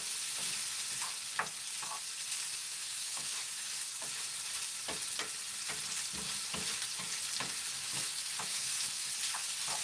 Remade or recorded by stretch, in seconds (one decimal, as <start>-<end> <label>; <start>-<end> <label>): 0.0-2.5 recorded; 2.5-4.0 remade; 4.0-7.8 recorded; 7.8-9.1 remade; 9.1-9.8 recorded